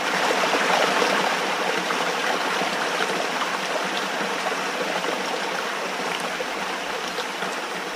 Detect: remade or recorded recorded